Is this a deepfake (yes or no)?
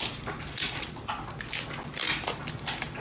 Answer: no